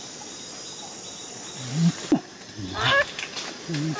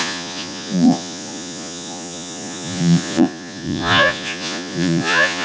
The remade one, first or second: second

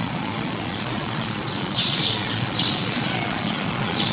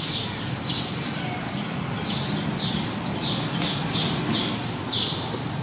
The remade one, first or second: first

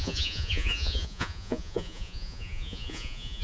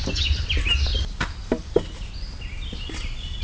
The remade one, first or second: first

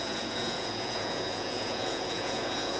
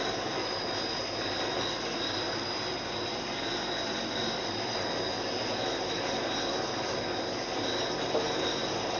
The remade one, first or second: first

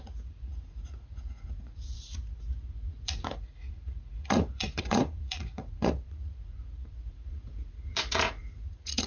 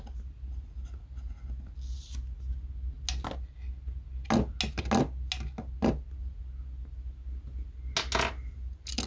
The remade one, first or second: first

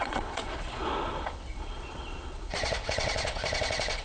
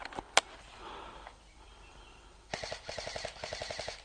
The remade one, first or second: first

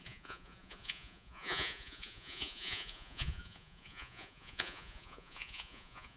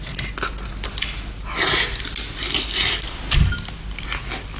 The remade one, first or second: first